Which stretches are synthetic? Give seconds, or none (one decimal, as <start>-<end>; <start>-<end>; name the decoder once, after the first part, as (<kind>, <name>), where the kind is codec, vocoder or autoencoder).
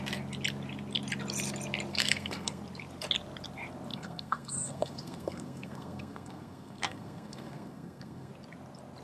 1.9-2.6 (codec, SNAC); 3.9-8.3